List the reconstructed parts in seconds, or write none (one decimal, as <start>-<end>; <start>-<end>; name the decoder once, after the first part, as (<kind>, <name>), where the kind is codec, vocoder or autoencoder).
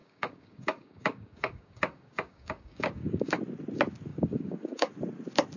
0.0-3.4 (codec, DAC); 4.1-4.9